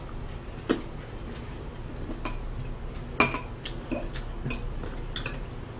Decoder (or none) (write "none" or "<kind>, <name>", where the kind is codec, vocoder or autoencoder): none